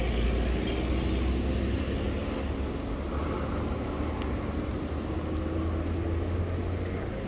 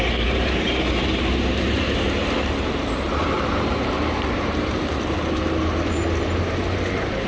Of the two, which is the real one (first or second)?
first